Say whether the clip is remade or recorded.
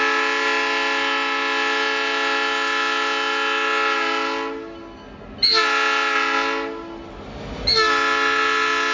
recorded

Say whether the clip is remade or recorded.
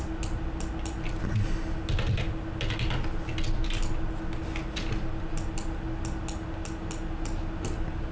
recorded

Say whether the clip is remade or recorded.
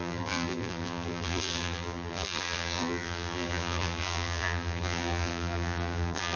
remade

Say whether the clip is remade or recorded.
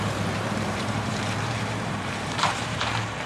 remade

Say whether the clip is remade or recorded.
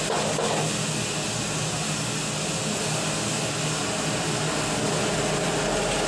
recorded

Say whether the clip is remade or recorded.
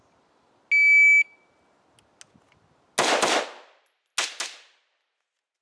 recorded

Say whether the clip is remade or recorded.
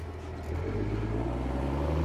recorded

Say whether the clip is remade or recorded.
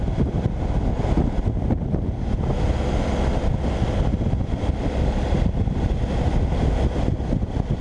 recorded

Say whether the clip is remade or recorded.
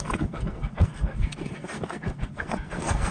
remade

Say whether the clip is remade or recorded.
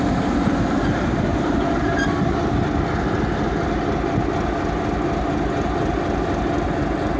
recorded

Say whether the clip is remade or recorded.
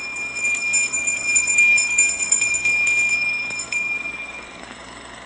remade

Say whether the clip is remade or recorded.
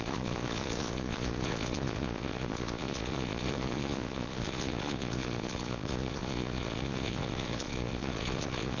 remade